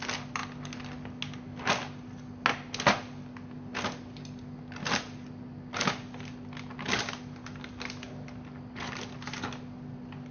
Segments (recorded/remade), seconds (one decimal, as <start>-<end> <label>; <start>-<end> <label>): 0.0-10.3 recorded